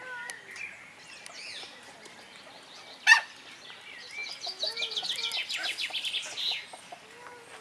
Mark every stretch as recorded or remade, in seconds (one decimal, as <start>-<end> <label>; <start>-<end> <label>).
0.0-7.6 recorded

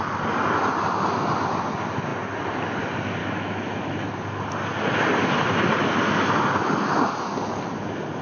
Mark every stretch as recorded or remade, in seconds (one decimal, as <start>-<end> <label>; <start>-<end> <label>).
0.0-3.2 recorded; 3.2-4.1 remade; 4.1-8.2 recorded

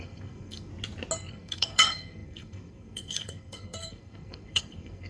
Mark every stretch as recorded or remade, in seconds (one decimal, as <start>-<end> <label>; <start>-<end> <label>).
0.0-0.7 remade; 0.7-1.3 recorded; 1.3-5.1 remade